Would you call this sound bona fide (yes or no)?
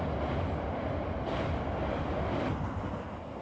yes